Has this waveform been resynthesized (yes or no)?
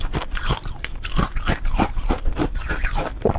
yes